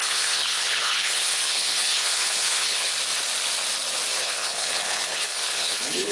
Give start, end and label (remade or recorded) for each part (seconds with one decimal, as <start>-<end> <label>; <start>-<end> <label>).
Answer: 0.0-2.9 remade; 2.9-4.1 recorded; 4.1-6.1 remade